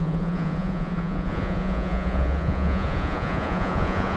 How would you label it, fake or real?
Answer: fake